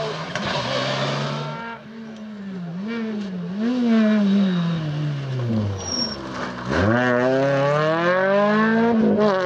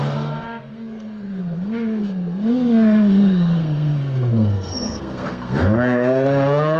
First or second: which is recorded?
first